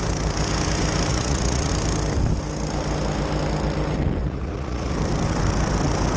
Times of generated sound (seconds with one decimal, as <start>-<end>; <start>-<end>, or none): 1.1-1.7; 4.2-4.9